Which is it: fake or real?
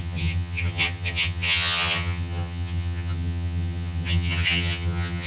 fake